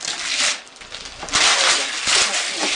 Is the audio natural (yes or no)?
yes